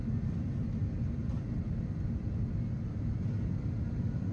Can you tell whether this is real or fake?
real